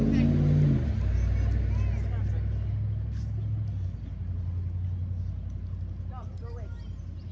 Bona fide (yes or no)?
yes